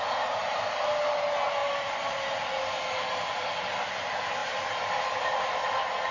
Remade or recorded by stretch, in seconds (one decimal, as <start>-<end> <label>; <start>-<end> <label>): 0.0-6.1 recorded